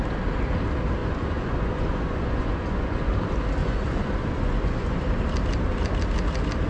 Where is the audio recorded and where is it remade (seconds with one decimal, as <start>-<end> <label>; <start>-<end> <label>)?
0.0-1.0 recorded; 1.0-3.1 remade; 3.1-3.6 recorded; 3.6-5.0 remade; 5.0-6.7 recorded